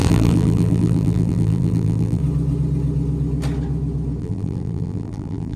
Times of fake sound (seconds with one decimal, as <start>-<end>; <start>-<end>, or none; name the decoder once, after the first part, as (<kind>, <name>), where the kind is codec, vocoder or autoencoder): 0.0-2.2 (vocoder, BigVGAN v2); 4.2-5.6